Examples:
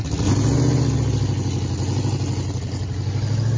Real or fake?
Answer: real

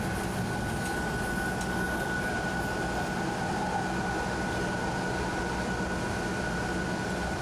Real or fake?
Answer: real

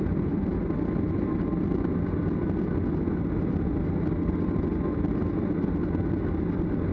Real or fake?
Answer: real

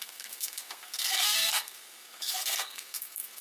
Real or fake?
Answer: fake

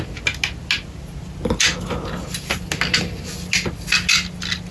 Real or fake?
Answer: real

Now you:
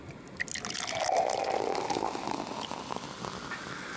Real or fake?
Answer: real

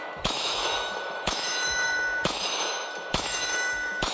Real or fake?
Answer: fake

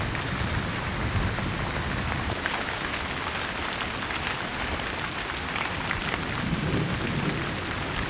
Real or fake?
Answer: real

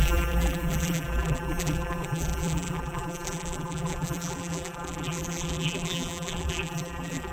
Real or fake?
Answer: fake